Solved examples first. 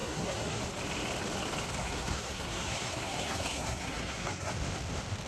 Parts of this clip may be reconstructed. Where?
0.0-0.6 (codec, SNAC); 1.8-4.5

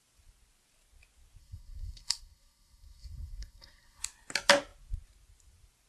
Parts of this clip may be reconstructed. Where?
1.4-4.0 (codec, SNAC)

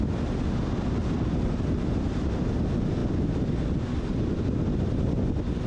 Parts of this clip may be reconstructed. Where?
none

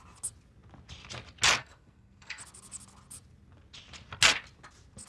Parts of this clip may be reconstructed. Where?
1.6-2.4 (codec, SNAC)

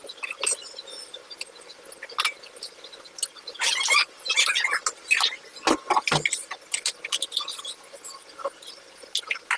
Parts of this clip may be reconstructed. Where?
none